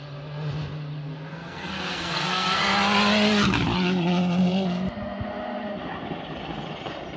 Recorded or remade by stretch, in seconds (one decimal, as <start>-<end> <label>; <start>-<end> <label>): 0.0-1.3 recorded; 1.3-2.6 remade; 2.6-7.2 recorded